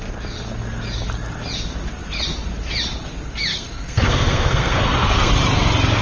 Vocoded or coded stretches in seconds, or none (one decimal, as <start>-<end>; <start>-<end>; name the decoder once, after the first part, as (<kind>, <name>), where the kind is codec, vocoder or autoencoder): 3.5-5.3 (codec, SNAC)